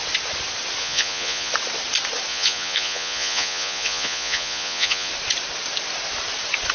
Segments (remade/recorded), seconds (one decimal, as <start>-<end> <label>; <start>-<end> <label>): 0.0-0.8 recorded; 0.8-1.5 remade; 1.5-2.3 recorded; 2.3-5.1 remade; 5.1-6.7 recorded